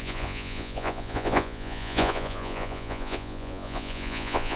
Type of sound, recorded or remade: remade